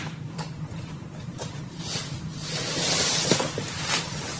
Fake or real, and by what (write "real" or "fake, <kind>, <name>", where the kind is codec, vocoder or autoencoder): real